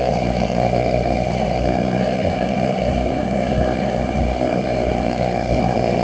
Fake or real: fake